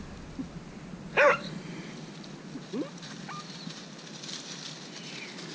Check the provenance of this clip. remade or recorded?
recorded